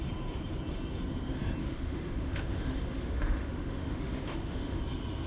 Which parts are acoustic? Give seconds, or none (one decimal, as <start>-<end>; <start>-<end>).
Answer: 0.0-1.6; 4.8-5.3